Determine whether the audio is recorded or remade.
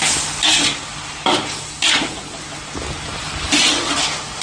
recorded